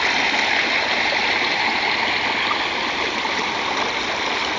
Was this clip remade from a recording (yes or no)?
no